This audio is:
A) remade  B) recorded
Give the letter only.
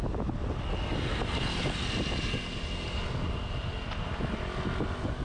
B